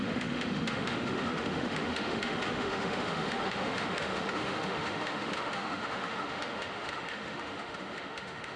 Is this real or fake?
fake